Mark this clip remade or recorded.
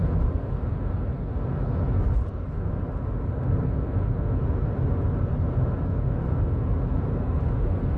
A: recorded